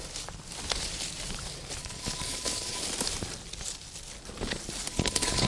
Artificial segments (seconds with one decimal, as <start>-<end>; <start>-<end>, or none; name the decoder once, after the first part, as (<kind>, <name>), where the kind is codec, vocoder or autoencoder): 1.8-2.8 (codec, HILCodec); 4.9-5.5